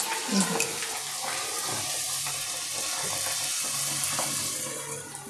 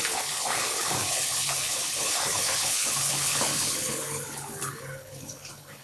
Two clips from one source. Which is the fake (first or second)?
second